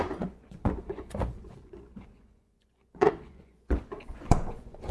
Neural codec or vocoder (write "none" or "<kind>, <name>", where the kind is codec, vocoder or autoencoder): vocoder, Vocos